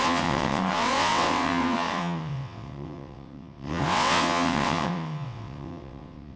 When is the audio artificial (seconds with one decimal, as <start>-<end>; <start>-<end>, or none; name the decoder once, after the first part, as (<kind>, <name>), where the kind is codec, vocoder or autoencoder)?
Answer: 0.0-6.4 (vocoder, WaveNeXt)

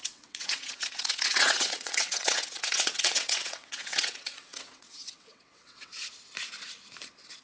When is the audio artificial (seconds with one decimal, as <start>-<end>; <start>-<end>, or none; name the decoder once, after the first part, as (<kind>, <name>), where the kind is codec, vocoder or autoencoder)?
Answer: 0.0-5.9 (vocoder, WaveNeXt)

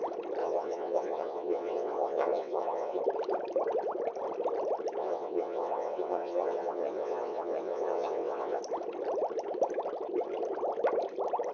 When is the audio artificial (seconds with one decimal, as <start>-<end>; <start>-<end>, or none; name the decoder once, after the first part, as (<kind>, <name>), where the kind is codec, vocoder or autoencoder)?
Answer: 0.4-3.0 (vocoder, WaveNeXt); 5.0-8.6